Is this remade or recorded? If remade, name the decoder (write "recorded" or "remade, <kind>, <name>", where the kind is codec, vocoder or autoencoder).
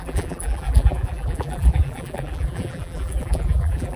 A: remade, vocoder, BigVGAN v2